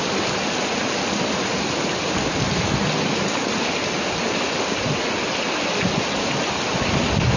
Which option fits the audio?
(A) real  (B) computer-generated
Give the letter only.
A